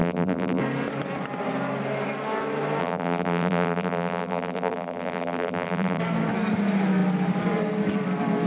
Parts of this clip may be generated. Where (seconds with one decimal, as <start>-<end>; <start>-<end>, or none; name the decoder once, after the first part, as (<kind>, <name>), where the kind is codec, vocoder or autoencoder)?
0.0-0.6 (vocoder, BigVGAN v2); 2.8-6.0